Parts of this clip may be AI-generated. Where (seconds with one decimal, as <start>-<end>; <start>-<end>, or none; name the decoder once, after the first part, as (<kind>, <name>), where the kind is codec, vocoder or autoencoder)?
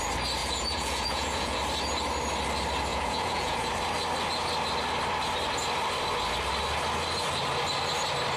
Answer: 0.4-1.6 (vocoder, Vocos); 2.9-3.7